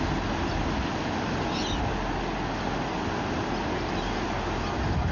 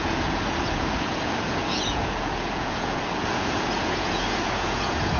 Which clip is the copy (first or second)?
second